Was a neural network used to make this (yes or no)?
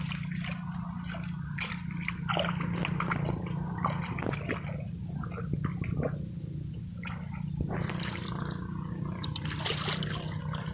no